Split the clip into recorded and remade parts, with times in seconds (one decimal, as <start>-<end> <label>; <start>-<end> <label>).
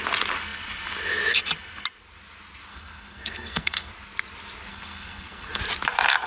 0.0-2.7 recorded; 2.7-3.9 remade; 3.9-4.7 recorded; 4.7-5.6 remade; 5.6-6.3 recorded